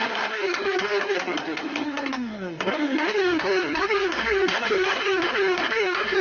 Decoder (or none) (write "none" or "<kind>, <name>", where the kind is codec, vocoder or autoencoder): codec, SNAC